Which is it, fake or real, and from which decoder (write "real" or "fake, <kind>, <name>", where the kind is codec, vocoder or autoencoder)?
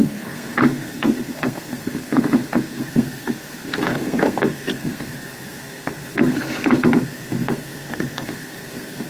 fake, codec, SNAC